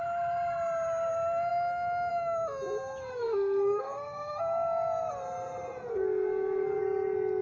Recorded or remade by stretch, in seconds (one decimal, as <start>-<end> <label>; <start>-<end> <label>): 0.0-3.1 recorded; 3.1-4.4 remade; 4.4-5.9 recorded; 5.9-6.8 remade; 6.8-7.4 recorded

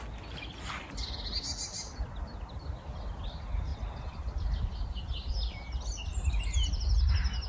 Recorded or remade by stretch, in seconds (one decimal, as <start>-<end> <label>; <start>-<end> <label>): 0.0-7.5 recorded

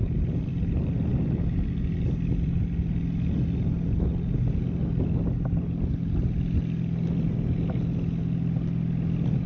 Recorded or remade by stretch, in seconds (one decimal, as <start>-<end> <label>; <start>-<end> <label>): 0.0-9.5 recorded